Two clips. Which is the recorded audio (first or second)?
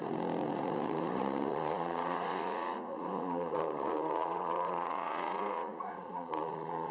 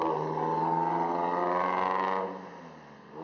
second